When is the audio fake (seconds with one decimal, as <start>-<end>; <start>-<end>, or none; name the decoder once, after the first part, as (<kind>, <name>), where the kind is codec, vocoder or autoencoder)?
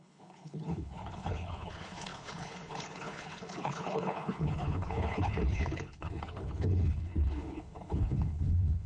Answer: 0.0-8.9 (codec, HILCodec)